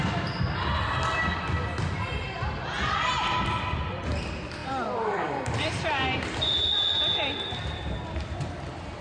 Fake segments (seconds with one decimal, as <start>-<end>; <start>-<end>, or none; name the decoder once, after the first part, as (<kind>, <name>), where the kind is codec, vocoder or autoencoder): 4.6-6.9 (vocoder, BigVGAN v2)